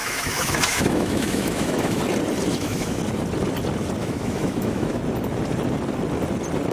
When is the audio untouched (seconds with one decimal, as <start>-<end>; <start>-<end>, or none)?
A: 2.0-2.5; 3.0-4.0; 5.0-6.7